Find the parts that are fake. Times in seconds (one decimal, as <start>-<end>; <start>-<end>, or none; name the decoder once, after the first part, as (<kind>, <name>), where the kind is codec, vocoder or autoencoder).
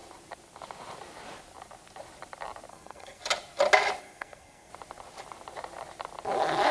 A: 2.7-3.2 (codec, SNAC); 4.0-4.7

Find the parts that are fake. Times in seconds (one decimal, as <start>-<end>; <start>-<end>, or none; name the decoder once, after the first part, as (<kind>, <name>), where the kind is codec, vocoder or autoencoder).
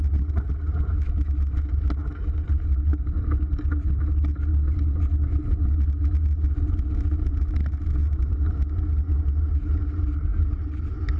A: 8.0-8.6 (vocoder, BigVGAN v2)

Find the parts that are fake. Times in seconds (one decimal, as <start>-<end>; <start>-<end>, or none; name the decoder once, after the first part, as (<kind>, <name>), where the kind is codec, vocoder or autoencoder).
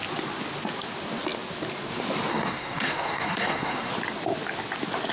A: 2.3-3.9 (codec, SNAC)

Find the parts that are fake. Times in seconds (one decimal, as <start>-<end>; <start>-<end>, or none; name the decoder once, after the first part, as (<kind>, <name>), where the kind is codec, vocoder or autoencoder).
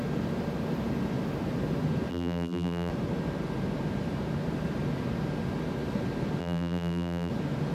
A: 2.1-2.9 (vocoder, BigVGAN v2); 6.4-7.3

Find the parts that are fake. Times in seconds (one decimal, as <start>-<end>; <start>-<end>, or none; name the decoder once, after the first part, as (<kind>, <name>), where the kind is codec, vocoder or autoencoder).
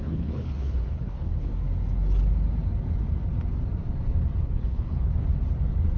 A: 0.0-1.5 (codec, HILCodec); 4.4-5.1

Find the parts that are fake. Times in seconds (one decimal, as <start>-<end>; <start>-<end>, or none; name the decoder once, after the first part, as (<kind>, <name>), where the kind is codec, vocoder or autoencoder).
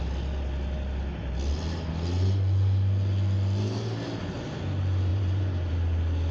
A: 5.1-5.7 (vocoder, BigVGAN v2)